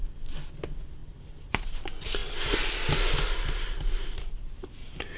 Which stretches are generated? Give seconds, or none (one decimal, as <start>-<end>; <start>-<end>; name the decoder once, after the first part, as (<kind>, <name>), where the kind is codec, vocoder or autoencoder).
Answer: none